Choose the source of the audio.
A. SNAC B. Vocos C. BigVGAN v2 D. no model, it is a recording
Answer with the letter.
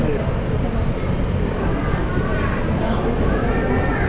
D